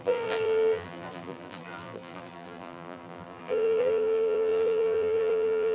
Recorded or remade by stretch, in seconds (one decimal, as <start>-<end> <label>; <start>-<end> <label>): 0.0-5.7 remade